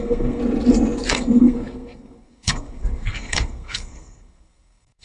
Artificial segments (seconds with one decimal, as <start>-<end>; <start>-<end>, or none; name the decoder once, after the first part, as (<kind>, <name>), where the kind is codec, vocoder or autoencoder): 0.0-0.4 (codec, SNAC); 1.1-5.0